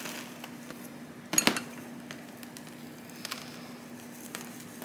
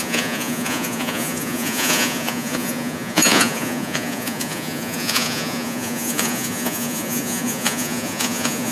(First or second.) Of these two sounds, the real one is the first